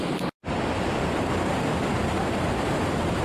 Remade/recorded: recorded